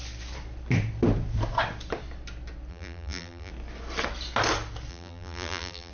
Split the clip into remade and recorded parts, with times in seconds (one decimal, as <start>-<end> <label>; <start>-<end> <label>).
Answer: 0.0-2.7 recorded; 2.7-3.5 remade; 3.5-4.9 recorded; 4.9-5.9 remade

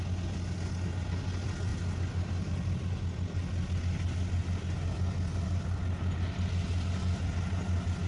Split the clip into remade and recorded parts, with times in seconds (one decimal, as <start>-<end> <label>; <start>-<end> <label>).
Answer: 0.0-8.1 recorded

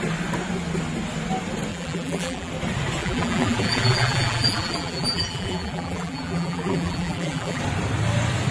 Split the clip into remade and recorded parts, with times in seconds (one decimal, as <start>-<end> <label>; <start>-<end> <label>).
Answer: 0.0-1.7 recorded; 1.7-2.5 remade; 2.5-3.0 recorded; 3.0-7.6 remade; 7.6-8.5 recorded

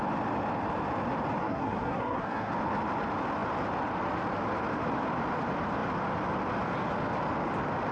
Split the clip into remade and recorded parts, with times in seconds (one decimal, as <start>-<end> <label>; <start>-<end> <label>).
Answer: 0.0-1.4 recorded; 1.4-2.5 remade; 2.5-7.9 recorded